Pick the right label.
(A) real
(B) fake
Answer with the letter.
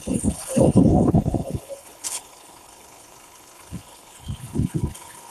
B